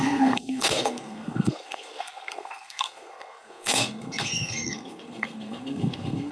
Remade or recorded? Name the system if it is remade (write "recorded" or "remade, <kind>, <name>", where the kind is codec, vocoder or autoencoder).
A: remade, codec, SNAC